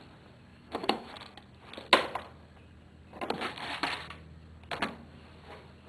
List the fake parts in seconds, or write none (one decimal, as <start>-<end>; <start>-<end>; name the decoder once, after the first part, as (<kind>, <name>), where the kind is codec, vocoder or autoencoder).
0.5-1.1 (autoencoder, DAC-VAE)